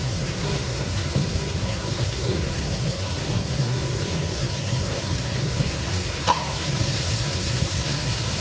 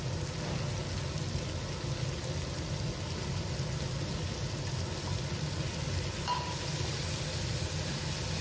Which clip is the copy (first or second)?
first